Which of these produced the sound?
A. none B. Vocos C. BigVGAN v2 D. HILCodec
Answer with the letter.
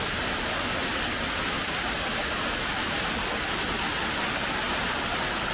A